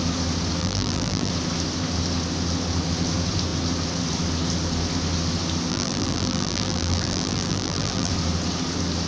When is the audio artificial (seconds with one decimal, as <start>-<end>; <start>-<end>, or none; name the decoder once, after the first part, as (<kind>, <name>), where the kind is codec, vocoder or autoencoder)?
0.6-1.3 (vocoder, BigVGAN v2); 5.7-8.1